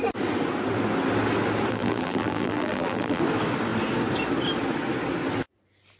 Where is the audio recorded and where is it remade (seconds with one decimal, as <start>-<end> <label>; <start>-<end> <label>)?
0.0-1.7 recorded; 1.7-3.2 remade; 3.2-6.0 recorded